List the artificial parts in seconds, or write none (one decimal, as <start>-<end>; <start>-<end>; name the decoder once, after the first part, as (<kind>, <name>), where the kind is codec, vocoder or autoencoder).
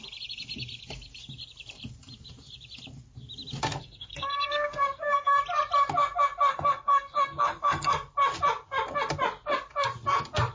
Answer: 3.8-5.4 (codec, SNAC); 6.5-7.9